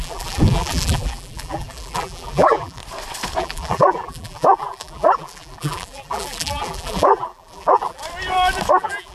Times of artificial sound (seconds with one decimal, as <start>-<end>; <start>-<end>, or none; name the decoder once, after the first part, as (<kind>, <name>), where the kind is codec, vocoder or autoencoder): 0.0-2.8 (vocoder, BigVGAN v2); 3.4-8.0; 8.7-9.1